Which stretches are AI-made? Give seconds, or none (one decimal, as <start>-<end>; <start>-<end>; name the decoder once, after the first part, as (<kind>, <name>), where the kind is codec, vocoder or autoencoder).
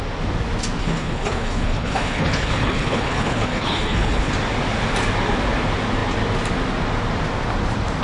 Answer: 0.8-4.3 (codec, HILCodec)